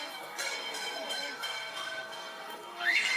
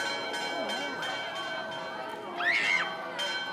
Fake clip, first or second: first